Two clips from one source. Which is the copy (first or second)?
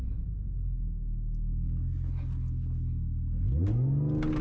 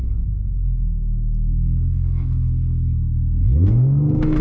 second